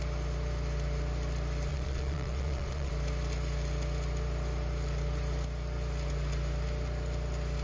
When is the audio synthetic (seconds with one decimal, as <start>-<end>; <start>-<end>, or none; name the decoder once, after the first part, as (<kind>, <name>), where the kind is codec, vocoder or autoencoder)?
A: 1.7-2.9 (vocoder, Vocos)